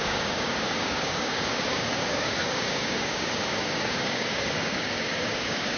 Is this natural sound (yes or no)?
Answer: no